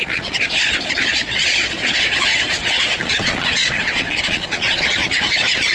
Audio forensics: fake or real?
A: fake